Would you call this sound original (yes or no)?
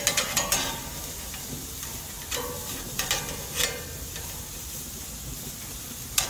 yes